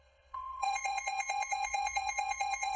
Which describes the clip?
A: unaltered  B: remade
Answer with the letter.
B